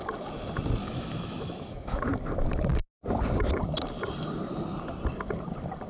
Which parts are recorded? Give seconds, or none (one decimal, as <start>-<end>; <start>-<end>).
0.0-0.8; 2.0-5.9